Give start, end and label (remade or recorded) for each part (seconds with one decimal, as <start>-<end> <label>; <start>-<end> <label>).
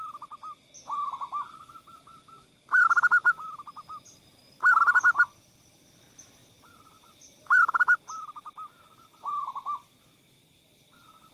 0.0-6.4 recorded; 6.4-7.8 remade; 7.8-11.3 recorded